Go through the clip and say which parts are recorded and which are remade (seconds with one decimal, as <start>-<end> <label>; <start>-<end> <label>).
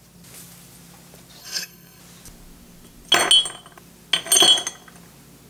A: 0.0-1.4 recorded; 1.4-2.0 remade; 2.0-5.5 recorded